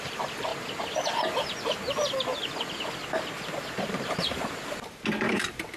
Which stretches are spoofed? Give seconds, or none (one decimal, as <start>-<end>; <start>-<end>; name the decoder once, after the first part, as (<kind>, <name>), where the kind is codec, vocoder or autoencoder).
0.0-0.5 (vocoder, BigVGAN v2); 3.7-5.8